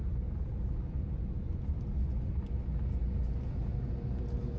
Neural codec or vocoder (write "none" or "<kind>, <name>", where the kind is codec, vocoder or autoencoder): none